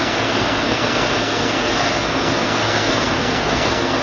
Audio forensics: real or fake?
fake